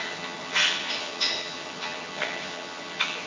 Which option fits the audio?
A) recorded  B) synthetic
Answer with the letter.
B